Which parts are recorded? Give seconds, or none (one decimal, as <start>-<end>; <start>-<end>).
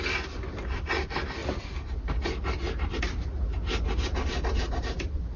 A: 0.0-5.4